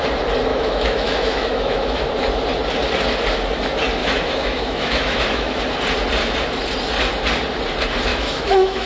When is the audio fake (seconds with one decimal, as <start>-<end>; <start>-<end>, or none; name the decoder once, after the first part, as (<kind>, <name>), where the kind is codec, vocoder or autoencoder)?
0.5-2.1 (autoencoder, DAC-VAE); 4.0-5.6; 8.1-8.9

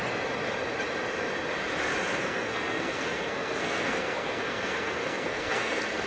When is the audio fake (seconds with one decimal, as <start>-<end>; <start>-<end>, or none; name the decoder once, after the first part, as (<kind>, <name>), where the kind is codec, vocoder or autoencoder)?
2.1-6.1 (codec, SNAC)

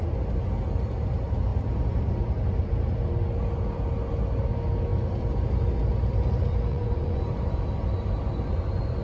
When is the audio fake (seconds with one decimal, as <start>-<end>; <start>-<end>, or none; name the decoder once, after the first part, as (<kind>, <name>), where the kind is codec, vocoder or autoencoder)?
6.7-7.2 (vocoder, Vocos)

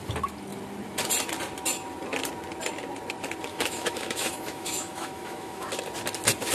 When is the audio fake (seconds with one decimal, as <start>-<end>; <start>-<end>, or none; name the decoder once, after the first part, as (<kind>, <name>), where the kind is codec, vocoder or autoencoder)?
3.5-5.7 (autoencoder, DAC-VAE)

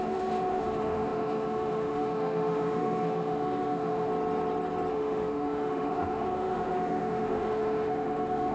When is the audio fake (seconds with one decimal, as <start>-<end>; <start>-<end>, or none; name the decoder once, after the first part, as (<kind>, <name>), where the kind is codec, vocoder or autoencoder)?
0.0-4.1 (autoencoder, DAC-VAE); 4.9-8.5

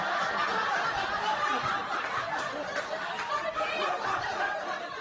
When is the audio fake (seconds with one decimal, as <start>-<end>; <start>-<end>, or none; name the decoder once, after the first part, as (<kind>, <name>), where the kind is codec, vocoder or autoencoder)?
none

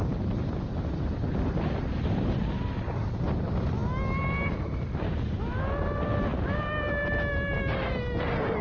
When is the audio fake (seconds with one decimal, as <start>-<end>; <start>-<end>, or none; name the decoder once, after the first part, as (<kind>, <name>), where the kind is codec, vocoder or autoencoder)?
none